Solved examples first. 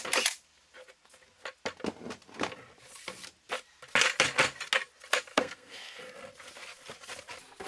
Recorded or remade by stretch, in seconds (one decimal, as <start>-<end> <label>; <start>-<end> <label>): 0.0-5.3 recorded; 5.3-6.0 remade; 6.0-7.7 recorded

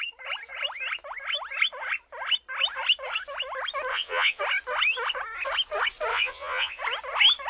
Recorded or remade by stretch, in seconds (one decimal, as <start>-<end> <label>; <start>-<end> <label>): 0.0-3.9 recorded; 3.9-4.4 remade; 4.4-6.1 recorded; 6.1-6.8 remade; 6.8-7.5 recorded

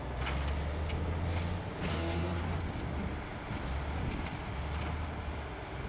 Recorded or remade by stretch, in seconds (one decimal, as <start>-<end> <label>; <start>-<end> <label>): 0.0-1.9 recorded; 1.9-2.4 remade; 2.4-5.9 recorded